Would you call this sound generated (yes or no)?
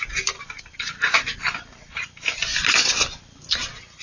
no